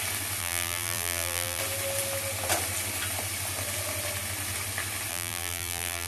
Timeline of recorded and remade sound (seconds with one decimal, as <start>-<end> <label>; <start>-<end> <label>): 0.0-0.4 recorded; 0.4-1.6 remade; 1.6-5.1 recorded; 5.1-6.1 remade